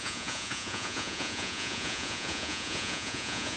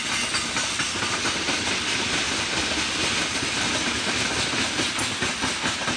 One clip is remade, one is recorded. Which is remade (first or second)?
first